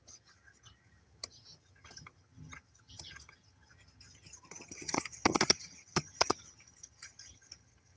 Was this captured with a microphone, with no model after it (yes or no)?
no